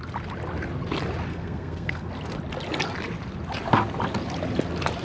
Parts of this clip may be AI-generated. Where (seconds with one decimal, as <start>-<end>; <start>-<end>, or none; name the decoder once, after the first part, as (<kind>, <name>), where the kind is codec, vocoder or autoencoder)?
1.3-2.1 (codec, SNAC)